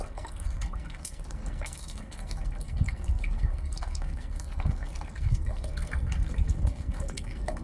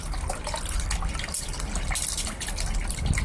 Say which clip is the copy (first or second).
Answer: first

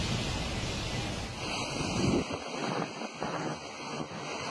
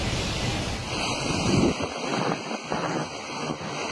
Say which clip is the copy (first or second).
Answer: second